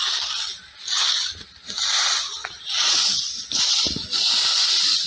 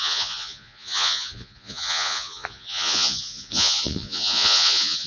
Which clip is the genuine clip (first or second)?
first